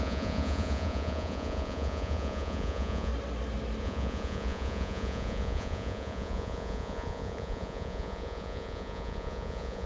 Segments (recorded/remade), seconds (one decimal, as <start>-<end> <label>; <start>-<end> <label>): 0.0-3.1 remade; 3.1-3.8 recorded; 3.8-9.9 remade